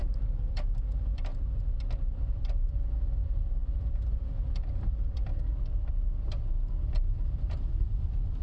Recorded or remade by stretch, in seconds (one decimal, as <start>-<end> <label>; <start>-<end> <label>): 0.0-1.3 remade; 1.3-2.2 recorded; 2.2-8.4 remade